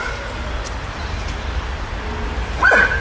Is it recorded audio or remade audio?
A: recorded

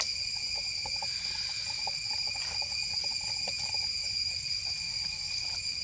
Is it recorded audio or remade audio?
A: recorded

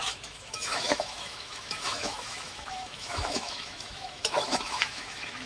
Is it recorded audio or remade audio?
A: remade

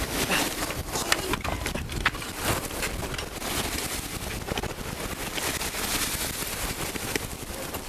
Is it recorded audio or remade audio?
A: recorded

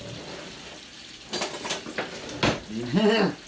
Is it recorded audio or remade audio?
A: recorded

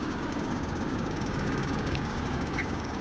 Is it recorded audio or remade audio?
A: remade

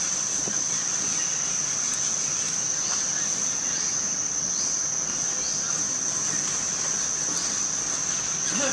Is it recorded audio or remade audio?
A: recorded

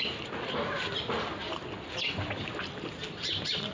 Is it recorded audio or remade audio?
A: recorded